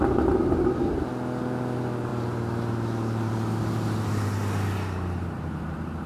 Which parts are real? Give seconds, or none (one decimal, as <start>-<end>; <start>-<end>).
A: 0.0-2.1